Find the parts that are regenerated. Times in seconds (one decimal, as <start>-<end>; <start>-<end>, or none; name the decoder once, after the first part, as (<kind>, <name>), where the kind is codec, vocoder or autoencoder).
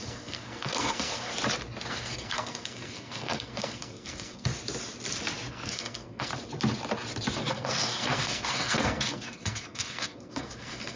0.0-1.3 (codec, SNAC); 1.9-4.5; 5.5-6.3; 7.5-11.0